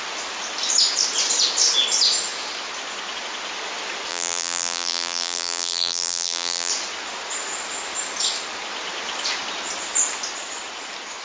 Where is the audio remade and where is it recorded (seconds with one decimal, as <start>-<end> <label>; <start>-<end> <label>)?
0.0-4.1 recorded; 4.1-6.7 remade; 6.7-11.2 recorded